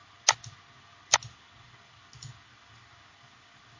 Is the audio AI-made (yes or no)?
no